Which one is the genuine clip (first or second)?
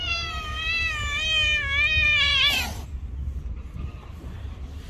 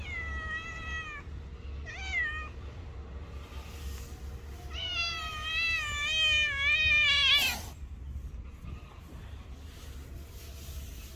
second